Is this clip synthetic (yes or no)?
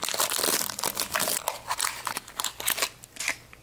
no